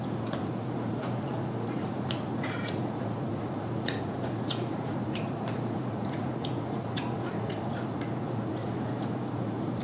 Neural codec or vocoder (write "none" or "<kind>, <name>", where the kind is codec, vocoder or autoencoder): vocoder, Vocos